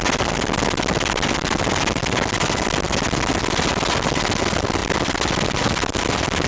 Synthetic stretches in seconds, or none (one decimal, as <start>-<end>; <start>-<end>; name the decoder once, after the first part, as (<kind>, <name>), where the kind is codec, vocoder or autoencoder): none